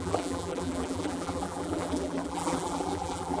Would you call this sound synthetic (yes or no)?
yes